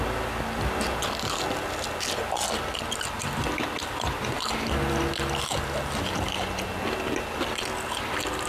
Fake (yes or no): no